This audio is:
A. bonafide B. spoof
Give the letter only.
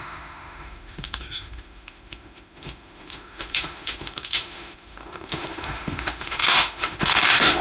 B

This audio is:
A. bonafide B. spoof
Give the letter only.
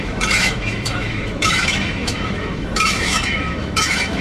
B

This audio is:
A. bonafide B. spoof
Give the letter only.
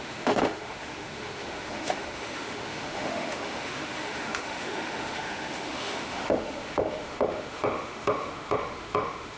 B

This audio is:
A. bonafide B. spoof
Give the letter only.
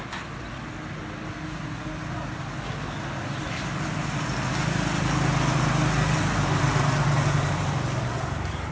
A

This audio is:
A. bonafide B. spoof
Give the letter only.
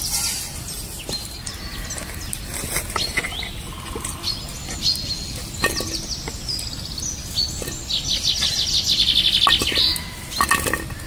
A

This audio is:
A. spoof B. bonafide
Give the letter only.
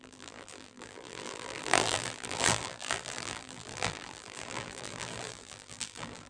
A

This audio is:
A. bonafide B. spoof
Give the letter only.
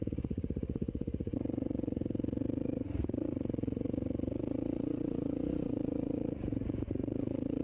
B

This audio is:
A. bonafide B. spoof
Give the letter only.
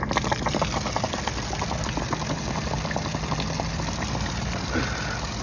A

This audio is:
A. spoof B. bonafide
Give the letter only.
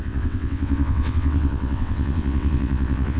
A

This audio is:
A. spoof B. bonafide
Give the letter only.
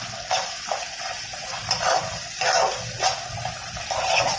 B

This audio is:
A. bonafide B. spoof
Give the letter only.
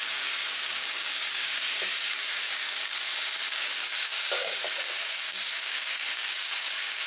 B